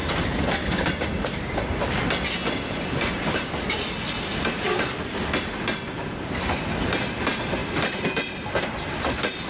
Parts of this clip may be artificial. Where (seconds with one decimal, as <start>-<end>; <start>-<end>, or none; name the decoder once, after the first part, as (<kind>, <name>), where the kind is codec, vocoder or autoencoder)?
none